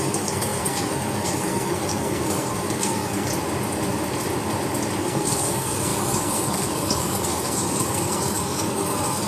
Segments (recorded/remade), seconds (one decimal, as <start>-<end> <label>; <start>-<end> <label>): 0.0-3.3 remade; 3.3-5.0 recorded; 5.0-9.3 remade